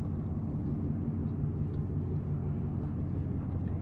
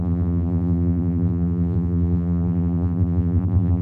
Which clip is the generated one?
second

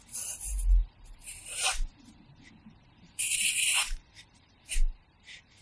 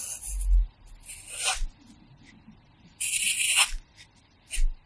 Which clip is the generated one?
first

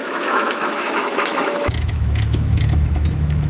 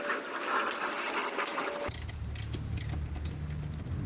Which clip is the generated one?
first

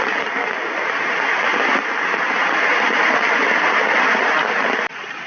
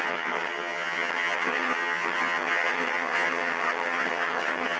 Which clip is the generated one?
second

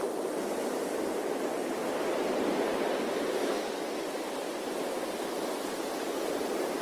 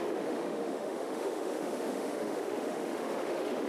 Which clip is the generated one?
second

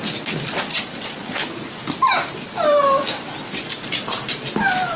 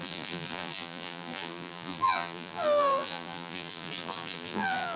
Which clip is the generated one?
second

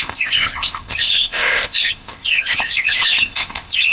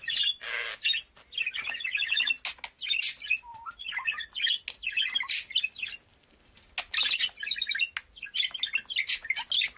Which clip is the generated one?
first